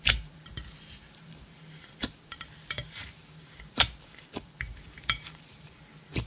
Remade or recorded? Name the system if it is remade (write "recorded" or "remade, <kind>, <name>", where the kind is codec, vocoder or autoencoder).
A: remade, vocoder, BigVGAN v2